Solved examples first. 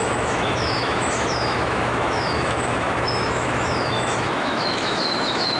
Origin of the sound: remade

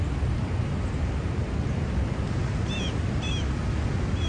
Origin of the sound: recorded